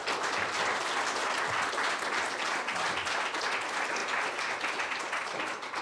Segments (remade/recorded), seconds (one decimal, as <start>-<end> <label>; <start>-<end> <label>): 0.0-5.8 recorded